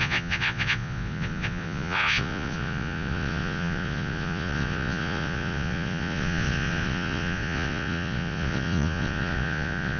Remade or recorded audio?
remade